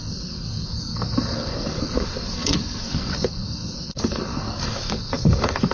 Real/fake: fake